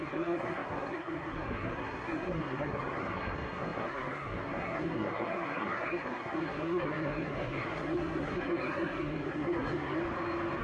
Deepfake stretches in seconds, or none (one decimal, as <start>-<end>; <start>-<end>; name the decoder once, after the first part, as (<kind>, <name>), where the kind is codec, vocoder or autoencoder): 0.0-10.0 (codec, SNAC)